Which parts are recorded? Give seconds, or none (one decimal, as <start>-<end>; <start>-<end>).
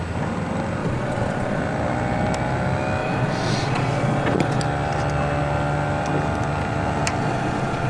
0.0-0.8; 1.6-3.0; 4.6-7.2